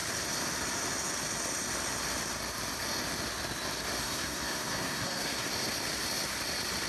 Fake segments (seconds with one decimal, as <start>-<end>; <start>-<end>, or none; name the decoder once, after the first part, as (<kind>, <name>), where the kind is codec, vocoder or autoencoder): 4.0-5.5 (codec, SNAC)